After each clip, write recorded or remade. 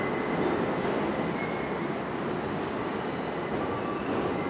recorded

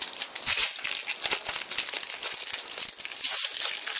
recorded